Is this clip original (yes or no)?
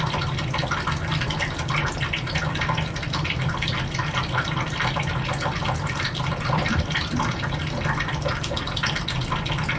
yes